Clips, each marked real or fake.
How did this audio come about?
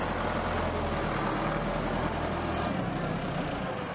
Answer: real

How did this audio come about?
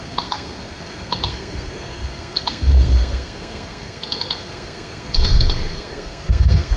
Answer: fake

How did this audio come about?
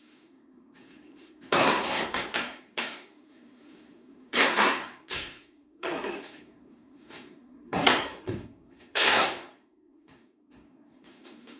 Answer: fake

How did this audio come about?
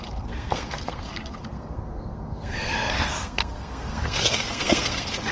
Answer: fake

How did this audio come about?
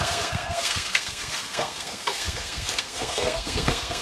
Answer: fake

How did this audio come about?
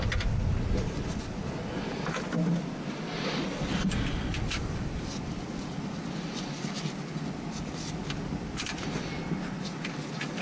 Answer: real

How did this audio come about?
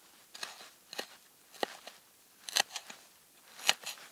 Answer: real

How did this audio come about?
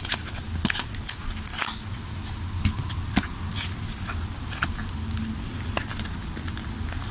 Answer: real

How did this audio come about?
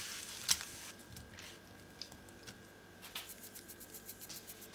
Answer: real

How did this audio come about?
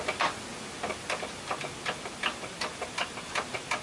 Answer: real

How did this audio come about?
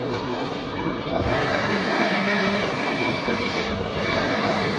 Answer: fake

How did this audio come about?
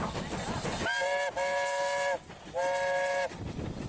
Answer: real